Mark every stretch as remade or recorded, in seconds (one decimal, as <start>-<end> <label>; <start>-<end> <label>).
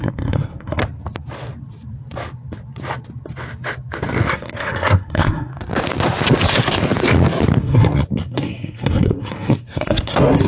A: 0.0-0.8 remade; 0.8-4.3 recorded; 4.3-5.5 remade; 5.5-7.6 recorded; 7.6-10.5 remade